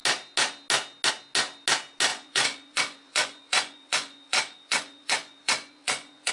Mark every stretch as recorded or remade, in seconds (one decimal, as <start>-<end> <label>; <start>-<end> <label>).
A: 0.0-2.1 recorded; 2.1-6.3 remade